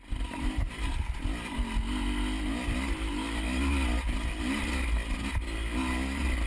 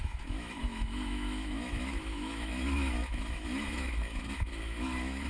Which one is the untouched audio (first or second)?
first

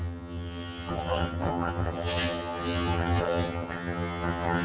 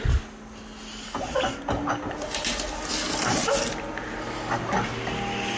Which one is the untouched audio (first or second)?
second